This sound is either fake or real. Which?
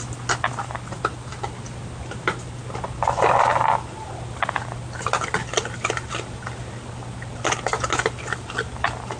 real